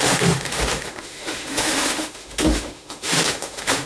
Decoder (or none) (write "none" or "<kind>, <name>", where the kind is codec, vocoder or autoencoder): autoencoder, DAC-VAE